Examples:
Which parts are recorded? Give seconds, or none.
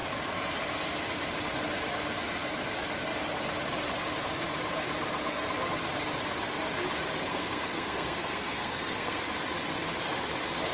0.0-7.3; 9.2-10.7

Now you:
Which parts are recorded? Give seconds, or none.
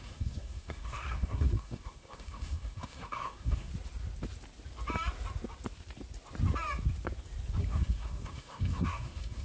3.7-7.6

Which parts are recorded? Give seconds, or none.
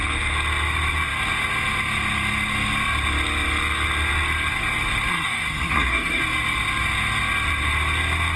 0.0-5.1; 6.2-8.4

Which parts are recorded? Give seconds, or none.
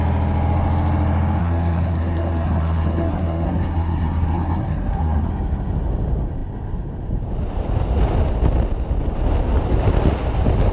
0.0-1.4; 5.3-10.7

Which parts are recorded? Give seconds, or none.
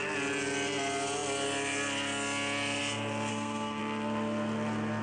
0.0-3.3; 3.8-5.0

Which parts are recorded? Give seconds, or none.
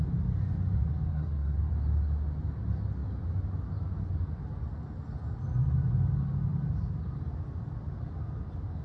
0.0-1.1; 1.7-8.8